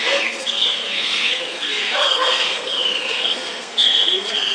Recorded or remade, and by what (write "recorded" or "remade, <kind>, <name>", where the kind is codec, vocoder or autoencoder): remade, codec, SNAC